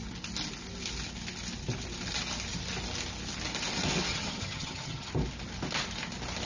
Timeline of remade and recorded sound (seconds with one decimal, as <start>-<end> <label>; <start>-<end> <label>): 0.0-4.1 recorded; 4.1-5.1 remade; 5.1-6.4 recorded